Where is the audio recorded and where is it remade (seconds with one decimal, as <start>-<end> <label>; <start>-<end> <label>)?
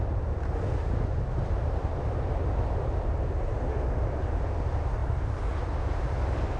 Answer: 0.0-6.6 recorded